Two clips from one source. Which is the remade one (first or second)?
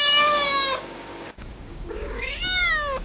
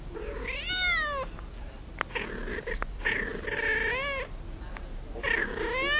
first